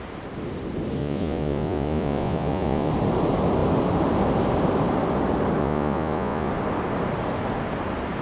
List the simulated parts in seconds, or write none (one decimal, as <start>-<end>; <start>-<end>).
1.0-2.9; 5.6-6.5